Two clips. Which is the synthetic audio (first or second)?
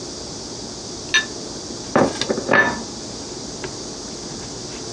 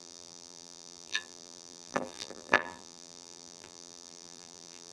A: second